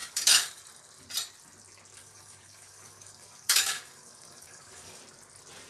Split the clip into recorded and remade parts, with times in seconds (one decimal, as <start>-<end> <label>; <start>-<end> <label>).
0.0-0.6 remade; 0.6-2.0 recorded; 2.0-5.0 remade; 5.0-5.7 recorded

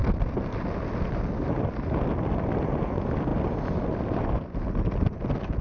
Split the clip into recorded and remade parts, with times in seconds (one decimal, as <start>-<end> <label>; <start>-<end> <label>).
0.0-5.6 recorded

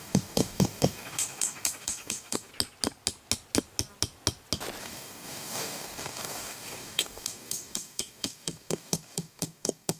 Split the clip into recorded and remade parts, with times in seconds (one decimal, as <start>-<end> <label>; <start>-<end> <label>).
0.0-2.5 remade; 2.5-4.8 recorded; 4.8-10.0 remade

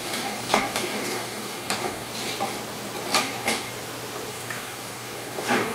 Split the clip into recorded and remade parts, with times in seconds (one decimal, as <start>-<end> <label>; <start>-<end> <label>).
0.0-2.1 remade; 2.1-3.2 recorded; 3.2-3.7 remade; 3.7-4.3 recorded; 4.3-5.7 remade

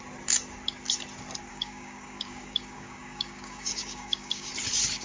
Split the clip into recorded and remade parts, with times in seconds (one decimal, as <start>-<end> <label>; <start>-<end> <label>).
0.0-1.5 recorded; 1.5-4.5 remade; 4.5-5.0 recorded

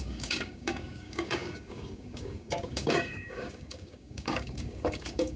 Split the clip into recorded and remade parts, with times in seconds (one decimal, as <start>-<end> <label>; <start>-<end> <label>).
0.0-5.4 remade

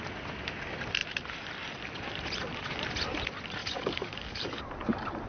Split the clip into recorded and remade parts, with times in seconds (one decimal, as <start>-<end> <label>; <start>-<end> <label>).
0.0-3.6 recorded; 3.6-4.6 remade; 4.6-5.3 recorded